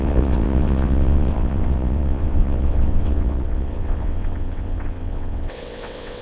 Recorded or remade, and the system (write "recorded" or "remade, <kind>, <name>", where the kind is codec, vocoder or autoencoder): remade, vocoder, WaveNeXt